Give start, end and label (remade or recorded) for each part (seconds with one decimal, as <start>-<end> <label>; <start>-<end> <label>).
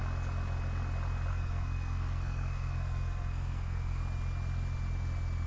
0.0-1.3 recorded; 1.3-4.0 remade; 4.0-5.5 recorded